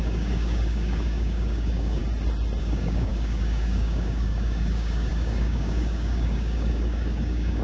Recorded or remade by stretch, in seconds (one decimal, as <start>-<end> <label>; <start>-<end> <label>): 0.0-2.0 remade; 2.0-2.6 recorded; 2.6-7.6 remade